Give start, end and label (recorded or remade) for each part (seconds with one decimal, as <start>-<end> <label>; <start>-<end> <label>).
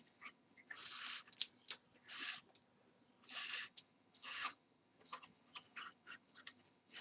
0.0-0.8 remade; 0.8-3.7 recorded; 3.7-7.0 remade